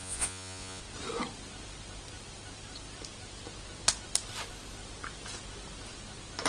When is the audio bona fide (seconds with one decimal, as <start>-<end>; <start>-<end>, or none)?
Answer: 0.8-6.5

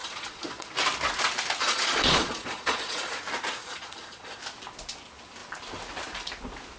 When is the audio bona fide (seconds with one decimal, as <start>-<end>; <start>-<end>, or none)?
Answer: 0.7-1.6; 3.2-3.6; 4.4-6.8

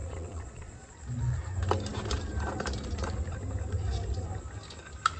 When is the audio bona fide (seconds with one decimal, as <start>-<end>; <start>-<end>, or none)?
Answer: 0.9-5.2

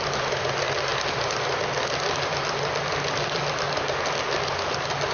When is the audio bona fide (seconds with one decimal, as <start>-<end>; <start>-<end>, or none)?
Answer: 0.0-5.1

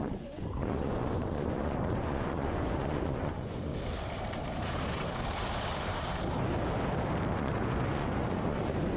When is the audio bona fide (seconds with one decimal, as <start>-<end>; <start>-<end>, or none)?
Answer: 3.7-7.3

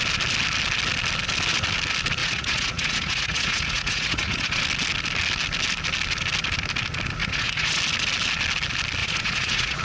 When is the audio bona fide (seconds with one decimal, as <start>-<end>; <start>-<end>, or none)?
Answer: 0.0-2.2; 4.6-7.2; 7.7-9.0